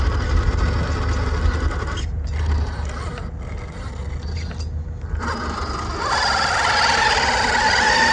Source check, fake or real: real